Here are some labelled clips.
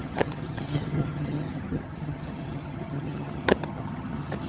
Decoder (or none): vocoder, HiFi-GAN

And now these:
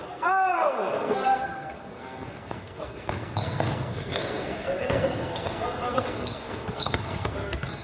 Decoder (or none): codec, SNAC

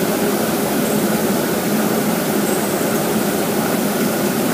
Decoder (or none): vocoder, BigVGAN v2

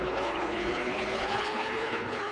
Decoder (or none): codec, HILCodec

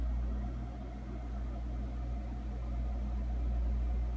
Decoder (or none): none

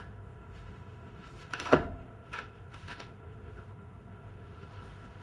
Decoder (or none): autoencoder, DAC-VAE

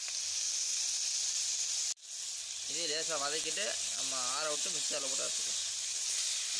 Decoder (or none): none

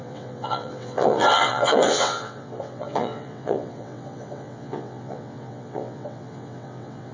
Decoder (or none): vocoder, WaveNeXt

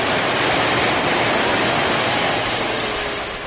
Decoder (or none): none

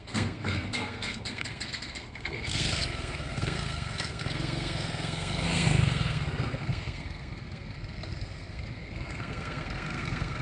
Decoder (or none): codec, SNAC